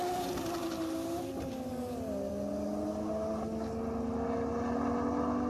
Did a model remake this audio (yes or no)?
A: no